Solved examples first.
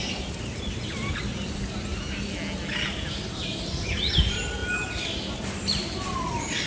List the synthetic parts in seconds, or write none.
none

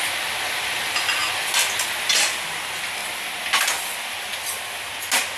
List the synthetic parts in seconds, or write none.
none

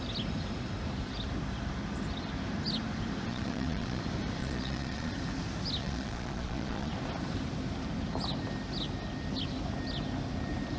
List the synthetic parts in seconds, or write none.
3.3-4.0; 4.4-5.1; 5.8-6.9

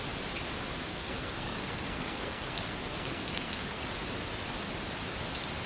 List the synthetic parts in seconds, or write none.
0.9-3.8

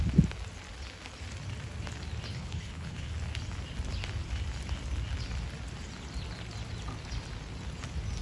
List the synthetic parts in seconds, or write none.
2.3-3.1

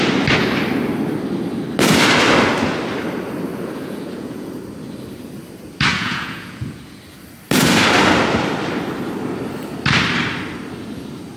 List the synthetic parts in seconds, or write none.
3.5-4.5; 5.9-7.0